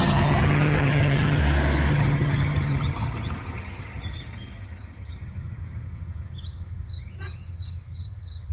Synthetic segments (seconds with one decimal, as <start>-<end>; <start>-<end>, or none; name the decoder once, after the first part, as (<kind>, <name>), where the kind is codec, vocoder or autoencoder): 0.0-1.4 (vocoder, HiFi-GAN); 1.9-8.5